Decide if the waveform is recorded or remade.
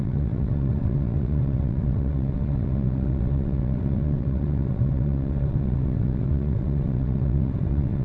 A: remade